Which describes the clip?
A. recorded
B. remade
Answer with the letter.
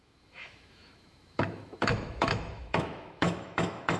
B